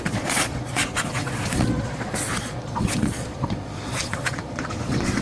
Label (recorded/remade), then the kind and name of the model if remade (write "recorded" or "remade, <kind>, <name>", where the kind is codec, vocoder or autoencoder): remade, vocoder, Vocos